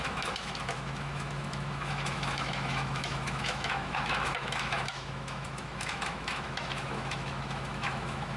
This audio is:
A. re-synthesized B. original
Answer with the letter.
A